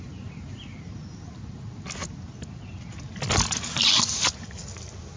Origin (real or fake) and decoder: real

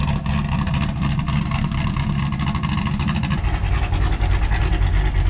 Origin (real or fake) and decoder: real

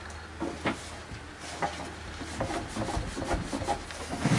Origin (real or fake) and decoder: real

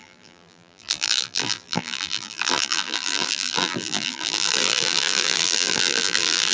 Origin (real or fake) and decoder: fake, vocoder, BigVGAN v2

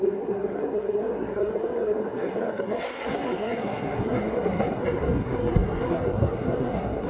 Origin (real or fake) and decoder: fake, codec, SNAC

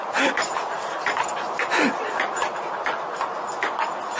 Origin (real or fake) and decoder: real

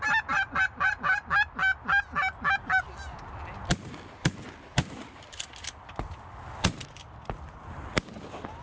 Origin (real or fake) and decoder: real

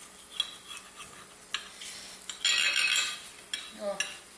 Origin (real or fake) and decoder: real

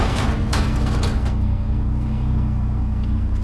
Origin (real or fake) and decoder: fake, codec, SNAC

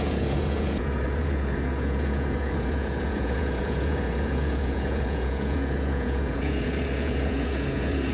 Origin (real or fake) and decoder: fake, vocoder, Vocos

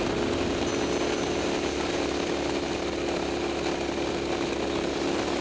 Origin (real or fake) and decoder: real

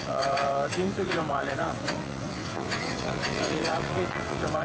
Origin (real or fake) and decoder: fake, vocoder, WaveNeXt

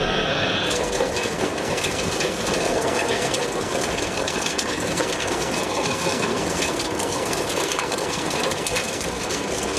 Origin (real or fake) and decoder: fake, codec, SNAC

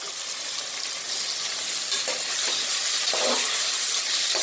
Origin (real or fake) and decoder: real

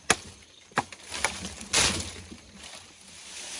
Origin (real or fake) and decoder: real